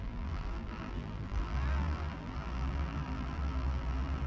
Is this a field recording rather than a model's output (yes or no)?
no